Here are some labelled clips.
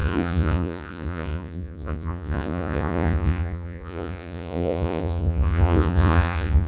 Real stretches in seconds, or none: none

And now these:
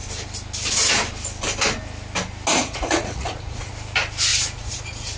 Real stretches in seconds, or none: 0.0-2.6; 3.7-4.3

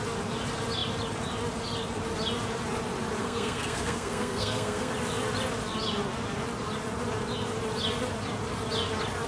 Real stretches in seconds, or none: 0.0-3.2; 4.9-9.3

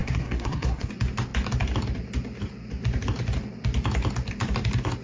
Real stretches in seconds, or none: 0.9-5.0

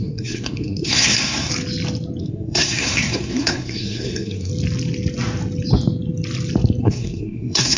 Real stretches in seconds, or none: 1.5-2.2; 4.5-6.8